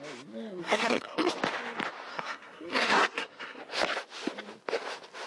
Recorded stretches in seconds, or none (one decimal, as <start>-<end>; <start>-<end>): 0.0-0.6; 1.3-2.1; 3.6-5.3